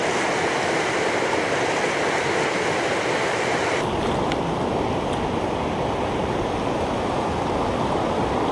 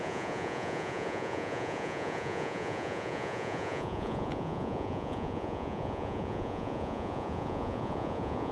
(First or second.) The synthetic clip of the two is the second